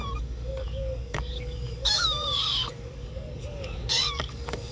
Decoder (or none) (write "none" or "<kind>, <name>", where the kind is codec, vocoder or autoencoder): codec, DAC